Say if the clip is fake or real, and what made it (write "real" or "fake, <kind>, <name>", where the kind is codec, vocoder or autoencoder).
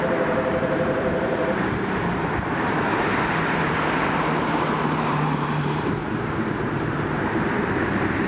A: fake, vocoder, BigVGAN v2